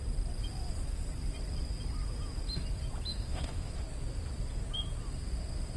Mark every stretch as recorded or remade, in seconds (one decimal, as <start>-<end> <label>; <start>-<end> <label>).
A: 0.0-3.1 recorded; 3.1-3.7 remade; 3.7-5.8 recorded